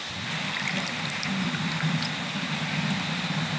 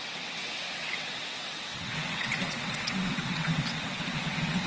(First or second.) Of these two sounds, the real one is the first